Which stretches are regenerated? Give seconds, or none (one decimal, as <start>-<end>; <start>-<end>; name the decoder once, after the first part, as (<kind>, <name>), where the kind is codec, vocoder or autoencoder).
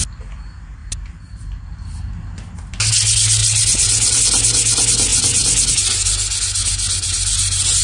0.8-2.9 (vocoder, BigVGAN v2); 3.4-4.2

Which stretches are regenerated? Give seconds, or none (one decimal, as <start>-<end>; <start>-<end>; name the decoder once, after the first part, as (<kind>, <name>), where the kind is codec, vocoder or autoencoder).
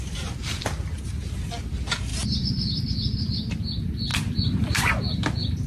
none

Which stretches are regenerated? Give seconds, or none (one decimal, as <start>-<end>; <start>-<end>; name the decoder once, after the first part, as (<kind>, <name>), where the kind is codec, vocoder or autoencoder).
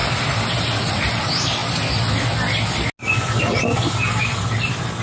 0.6-1.6 (vocoder, BigVGAN v2); 3.9-5.0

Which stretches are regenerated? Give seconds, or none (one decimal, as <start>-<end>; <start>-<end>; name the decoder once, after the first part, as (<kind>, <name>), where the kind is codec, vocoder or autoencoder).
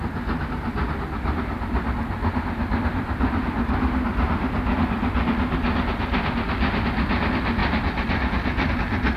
7.6-8.7 (vocoder, BigVGAN v2)